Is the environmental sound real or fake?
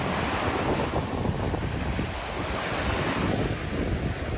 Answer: real